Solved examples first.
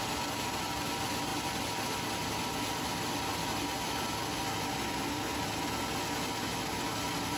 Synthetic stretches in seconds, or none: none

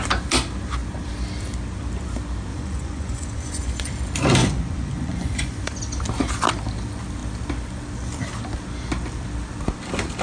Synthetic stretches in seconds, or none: 2.5-3.9 (vocoder, Vocos); 4.4-5.8

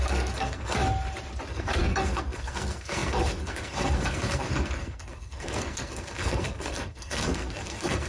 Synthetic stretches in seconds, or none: 0.0-0.8 (codec, SNAC); 1.5-8.1